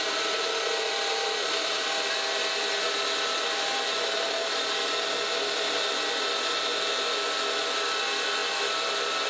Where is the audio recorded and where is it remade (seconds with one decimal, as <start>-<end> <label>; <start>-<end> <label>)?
0.0-9.3 recorded